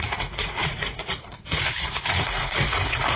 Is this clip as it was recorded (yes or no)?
no